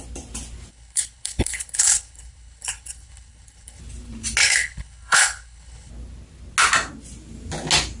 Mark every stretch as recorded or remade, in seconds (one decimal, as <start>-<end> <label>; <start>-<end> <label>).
0.0-0.7 recorded; 0.7-3.8 remade; 3.8-4.4 recorded; 4.4-5.9 remade; 5.9-8.0 recorded